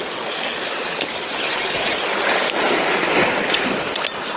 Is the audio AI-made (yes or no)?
no